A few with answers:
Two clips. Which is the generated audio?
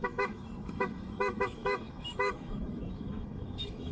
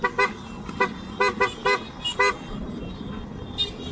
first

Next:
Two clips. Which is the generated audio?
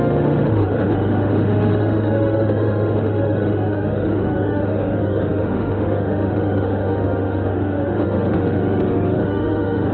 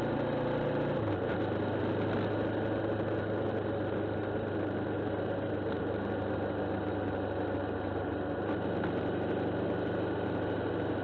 first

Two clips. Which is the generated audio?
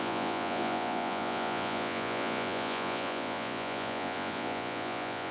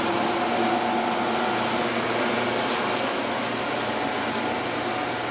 first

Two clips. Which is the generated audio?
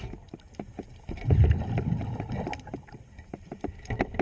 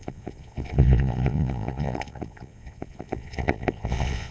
second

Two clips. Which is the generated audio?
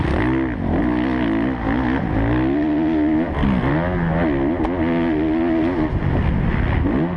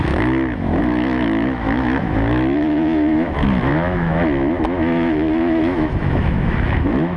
second